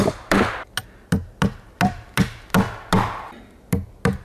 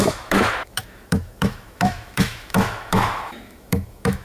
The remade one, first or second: second